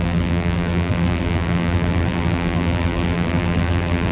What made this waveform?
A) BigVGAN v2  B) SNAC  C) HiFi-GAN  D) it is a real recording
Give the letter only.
A